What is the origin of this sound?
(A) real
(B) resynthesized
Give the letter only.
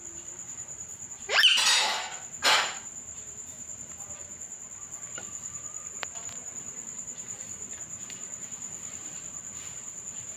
B